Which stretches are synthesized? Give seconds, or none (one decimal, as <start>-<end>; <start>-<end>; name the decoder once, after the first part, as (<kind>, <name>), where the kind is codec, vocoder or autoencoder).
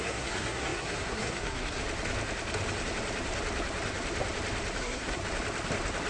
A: 0.0-1.8 (codec, SNAC); 4.8-5.2